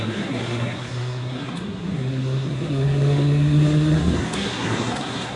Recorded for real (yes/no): no